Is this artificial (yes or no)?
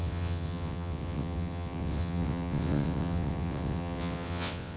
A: yes